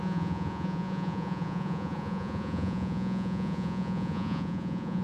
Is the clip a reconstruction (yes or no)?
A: yes